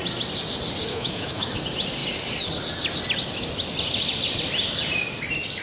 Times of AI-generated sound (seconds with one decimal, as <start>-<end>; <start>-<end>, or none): 0.9-1.5